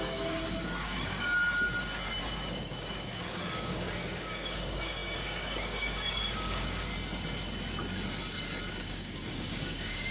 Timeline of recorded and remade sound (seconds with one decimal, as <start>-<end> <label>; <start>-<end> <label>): 0.0-1.4 remade; 1.4-2.2 recorded; 2.2-6.9 remade; 6.9-8.7 recorded; 8.7-10.1 remade